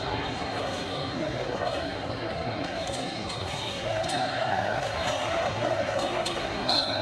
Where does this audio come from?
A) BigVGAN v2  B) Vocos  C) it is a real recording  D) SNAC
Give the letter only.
D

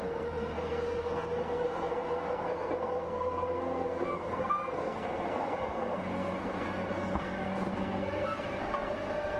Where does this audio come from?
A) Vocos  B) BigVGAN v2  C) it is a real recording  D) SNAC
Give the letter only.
D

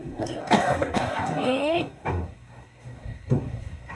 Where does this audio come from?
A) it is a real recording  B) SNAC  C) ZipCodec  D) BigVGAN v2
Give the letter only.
B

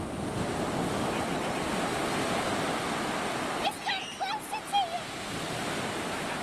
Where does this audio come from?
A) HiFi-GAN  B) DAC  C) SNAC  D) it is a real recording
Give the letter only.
D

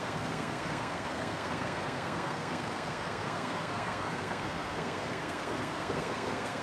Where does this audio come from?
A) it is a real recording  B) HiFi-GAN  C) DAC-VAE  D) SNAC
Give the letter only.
D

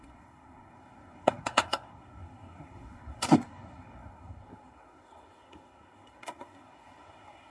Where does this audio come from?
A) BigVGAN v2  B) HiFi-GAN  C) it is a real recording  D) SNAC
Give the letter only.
D